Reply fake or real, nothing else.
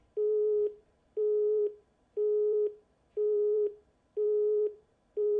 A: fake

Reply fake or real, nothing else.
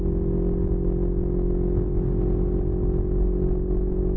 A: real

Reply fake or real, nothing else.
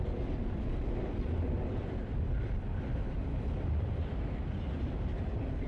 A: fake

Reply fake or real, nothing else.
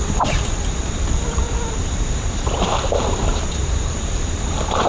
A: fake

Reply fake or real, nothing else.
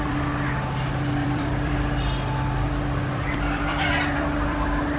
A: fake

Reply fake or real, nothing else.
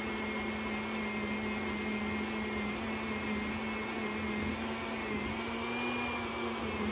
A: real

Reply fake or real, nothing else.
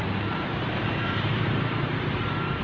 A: fake